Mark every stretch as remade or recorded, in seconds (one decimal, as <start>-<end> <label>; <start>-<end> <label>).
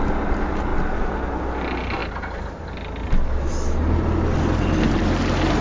0.0-5.6 recorded